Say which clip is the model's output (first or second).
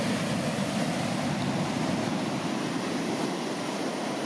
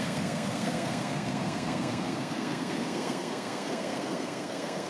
second